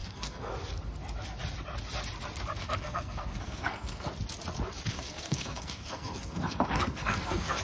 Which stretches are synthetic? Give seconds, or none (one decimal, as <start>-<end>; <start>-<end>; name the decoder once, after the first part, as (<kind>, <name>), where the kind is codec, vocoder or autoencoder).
0.0-0.5 (codec, SNAC); 2.6-4.1; 4.9-7.6